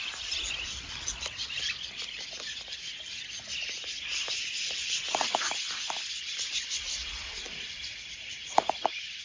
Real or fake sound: real